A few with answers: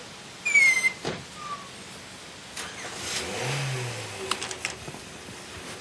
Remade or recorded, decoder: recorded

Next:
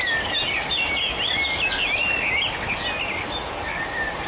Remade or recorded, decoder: recorded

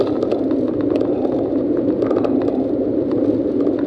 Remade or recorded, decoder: recorded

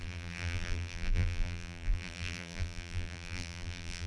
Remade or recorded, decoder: remade, vocoder, BigVGAN v2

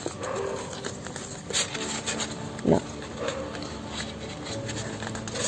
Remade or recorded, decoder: recorded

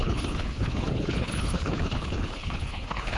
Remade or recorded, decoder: remade, codec, HILCodec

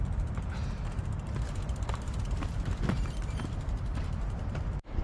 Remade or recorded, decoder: remade, vocoder, BigVGAN v2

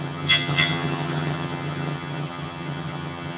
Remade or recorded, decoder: remade, vocoder, HiFi-GAN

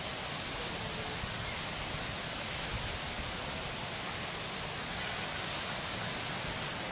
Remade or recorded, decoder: recorded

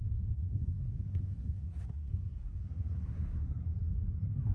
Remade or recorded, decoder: remade, codec, SNAC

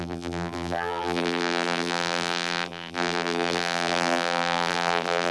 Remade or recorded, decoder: remade, vocoder, BigVGAN v2